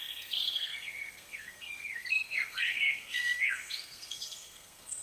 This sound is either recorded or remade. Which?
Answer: remade